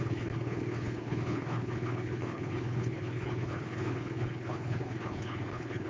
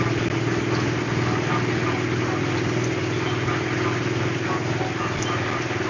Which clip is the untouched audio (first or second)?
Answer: second